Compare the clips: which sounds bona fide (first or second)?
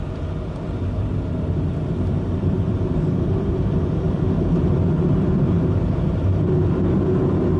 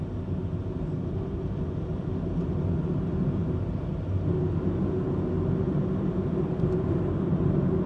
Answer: second